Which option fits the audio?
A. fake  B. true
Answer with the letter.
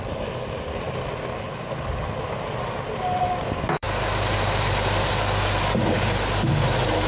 A